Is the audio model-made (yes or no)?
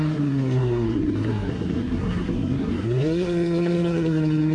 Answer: yes